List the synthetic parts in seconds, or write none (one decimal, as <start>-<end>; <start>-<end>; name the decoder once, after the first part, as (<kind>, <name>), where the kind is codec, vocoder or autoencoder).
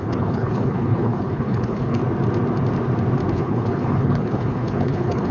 0.0-2.0 (codec, HILCodec); 3.3-5.3